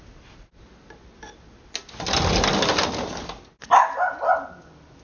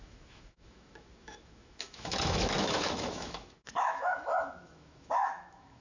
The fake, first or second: second